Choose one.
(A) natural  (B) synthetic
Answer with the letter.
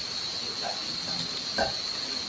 A